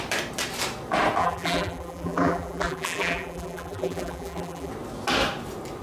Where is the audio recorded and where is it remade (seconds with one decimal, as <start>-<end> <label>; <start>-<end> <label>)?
0.0-1.2 recorded; 1.2-4.7 remade; 4.7-5.8 recorded